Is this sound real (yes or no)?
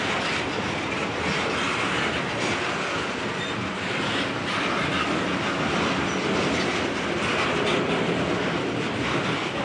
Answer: yes